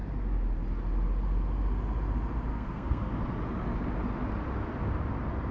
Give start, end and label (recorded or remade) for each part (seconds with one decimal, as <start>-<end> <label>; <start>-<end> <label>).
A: 0.0-2.5 recorded; 2.5-3.1 remade; 3.1-5.5 recorded